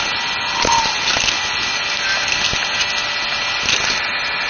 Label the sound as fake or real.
real